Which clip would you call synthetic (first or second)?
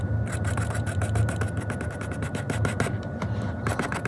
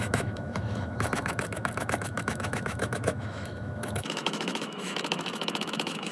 second